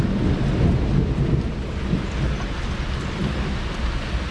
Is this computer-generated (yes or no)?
no